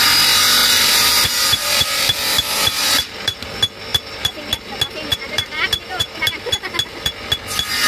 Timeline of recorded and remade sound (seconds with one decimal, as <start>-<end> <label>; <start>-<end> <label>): 0.0-0.6 recorded; 0.6-3.4 remade; 3.4-3.9 recorded; 3.9-4.5 remade; 4.5-5.1 recorded; 5.1-6.3 remade; 6.3-7.9 recorded